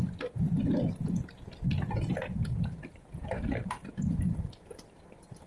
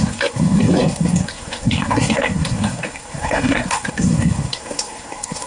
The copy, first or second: second